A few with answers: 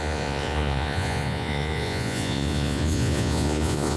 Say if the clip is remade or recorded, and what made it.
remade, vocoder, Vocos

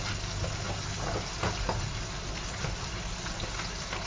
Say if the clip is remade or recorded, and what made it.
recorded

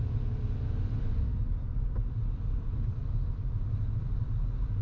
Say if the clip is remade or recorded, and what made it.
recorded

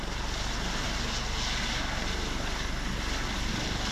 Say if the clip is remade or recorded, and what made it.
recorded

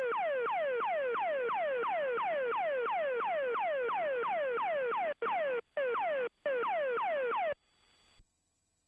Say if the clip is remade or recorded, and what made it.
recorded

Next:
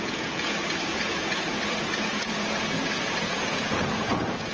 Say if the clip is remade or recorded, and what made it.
remade, vocoder, Vocos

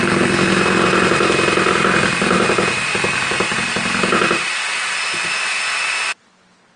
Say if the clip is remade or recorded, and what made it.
recorded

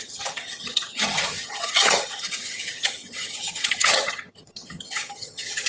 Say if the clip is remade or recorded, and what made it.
remade, vocoder, HiFi-GAN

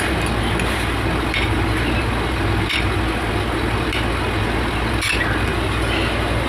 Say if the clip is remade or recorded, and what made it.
recorded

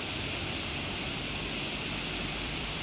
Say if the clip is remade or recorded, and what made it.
remade, vocoder, BigVGAN v2